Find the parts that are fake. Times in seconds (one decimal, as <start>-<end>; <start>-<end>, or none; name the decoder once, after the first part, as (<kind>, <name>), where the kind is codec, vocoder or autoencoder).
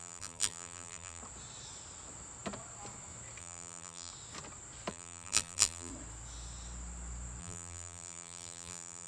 0.0-1.2 (vocoder, BigVGAN v2); 3.4-4.1; 4.9-5.9; 7.4-9.1